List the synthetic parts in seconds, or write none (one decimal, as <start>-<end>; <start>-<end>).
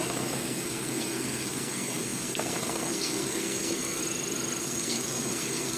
0.0-4.0; 4.6-5.8